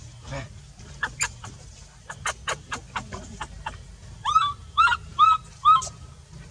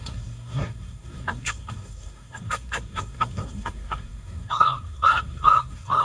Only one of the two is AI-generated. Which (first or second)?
second